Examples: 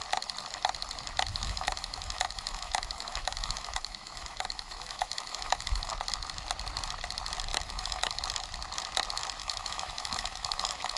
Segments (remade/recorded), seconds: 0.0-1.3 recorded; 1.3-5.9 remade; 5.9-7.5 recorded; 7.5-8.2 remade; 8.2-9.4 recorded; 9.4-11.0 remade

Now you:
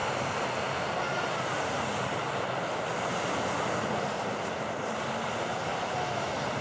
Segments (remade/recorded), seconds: 0.0-2.2 remade; 2.2-5.7 recorded; 5.7-6.6 remade

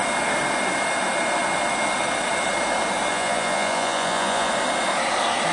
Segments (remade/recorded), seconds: 0.0-3.1 recorded; 3.1-4.5 remade; 4.5-5.5 recorded

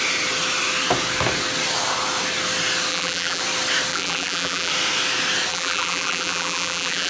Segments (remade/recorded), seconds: 0.0-2.9 recorded; 2.9-3.4 remade; 3.4-3.9 recorded; 3.9-4.7 remade; 4.7-5.5 recorded; 5.5-7.1 remade

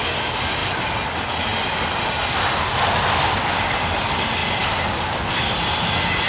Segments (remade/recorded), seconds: 0.0-6.3 recorded

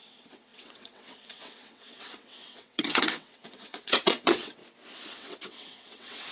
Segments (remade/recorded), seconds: 0.0-4.6 remade; 4.6-5.1 recorded; 5.1-6.3 remade

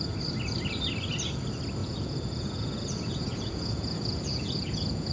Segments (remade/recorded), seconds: 0.0-1.8 recorded; 1.8-5.1 remade

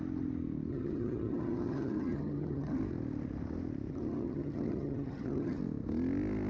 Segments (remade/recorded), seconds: 0.0-0.7 recorded; 0.7-2.8 remade; 2.8-3.9 recorded; 3.9-5.6 remade; 5.6-6.5 recorded